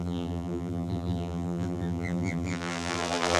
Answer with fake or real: fake